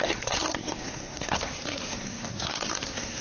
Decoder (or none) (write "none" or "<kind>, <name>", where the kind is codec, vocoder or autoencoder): codec, SNAC